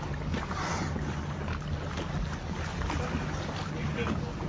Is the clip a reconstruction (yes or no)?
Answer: no